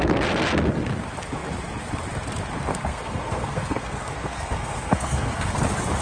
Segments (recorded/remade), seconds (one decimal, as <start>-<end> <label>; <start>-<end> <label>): 0.0-2.7 recorded; 2.7-5.6 remade; 5.6-6.0 recorded